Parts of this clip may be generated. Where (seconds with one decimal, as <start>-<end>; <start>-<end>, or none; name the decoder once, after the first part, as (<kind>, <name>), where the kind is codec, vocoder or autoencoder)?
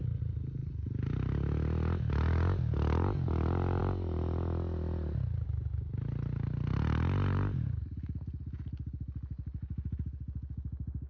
none